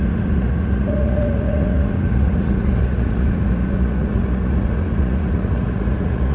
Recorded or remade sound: remade